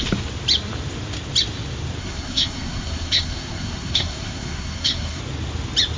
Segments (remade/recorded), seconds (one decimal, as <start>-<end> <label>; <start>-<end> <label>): 0.0-2.0 recorded; 2.0-5.2 remade; 5.2-6.0 recorded